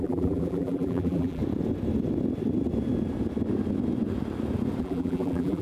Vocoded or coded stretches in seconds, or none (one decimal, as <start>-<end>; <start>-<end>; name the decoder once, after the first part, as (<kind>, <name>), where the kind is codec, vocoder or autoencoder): 0.0-1.4 (vocoder, BigVGAN v2); 4.8-5.6